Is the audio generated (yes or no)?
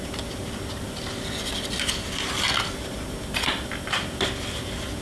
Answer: no